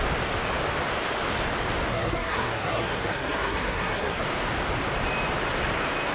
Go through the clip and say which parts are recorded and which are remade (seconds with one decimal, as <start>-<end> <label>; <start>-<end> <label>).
0.0-1.9 recorded; 1.9-4.2 remade; 4.2-6.1 recorded